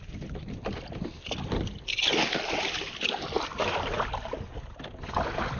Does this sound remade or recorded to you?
recorded